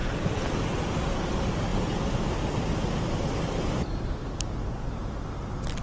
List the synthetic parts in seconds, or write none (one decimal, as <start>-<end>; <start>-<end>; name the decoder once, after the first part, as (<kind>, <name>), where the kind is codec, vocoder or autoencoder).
none